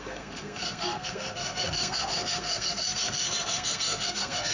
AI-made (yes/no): yes